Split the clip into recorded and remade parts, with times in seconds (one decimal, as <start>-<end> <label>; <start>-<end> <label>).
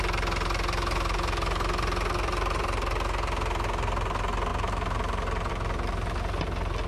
0.0-6.9 recorded